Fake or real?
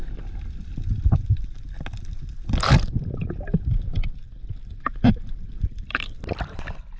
real